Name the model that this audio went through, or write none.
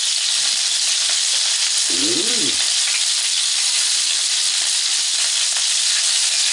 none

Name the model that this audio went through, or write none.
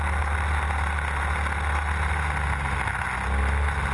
none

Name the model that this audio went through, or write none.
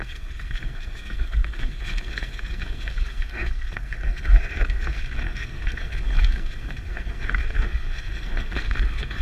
codec, SNAC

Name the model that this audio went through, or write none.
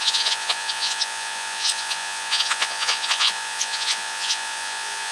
vocoder, Vocos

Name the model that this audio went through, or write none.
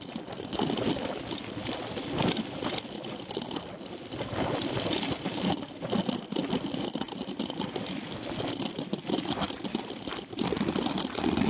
none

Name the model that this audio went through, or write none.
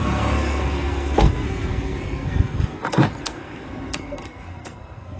codec, SNAC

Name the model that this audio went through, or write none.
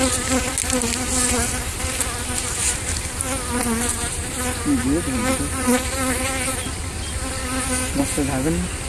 none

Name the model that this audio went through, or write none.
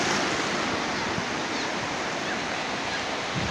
none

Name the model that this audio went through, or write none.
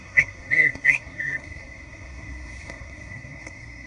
codec, SNAC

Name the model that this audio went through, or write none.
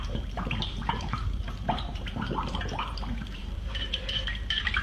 vocoder, BigVGAN v2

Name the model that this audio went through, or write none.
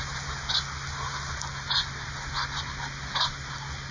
none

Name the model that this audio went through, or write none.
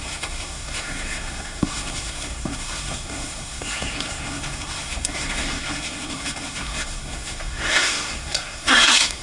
codec, SNAC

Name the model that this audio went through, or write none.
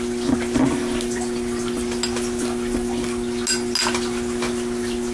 none